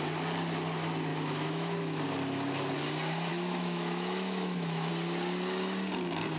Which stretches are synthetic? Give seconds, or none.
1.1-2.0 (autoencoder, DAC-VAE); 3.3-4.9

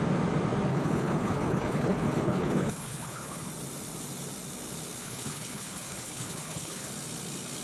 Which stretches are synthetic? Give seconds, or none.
0.7-3.5 (codec, HILCodec); 5.0-6.9